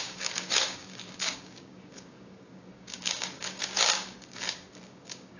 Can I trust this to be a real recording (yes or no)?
no